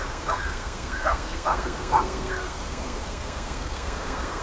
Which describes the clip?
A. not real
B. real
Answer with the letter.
A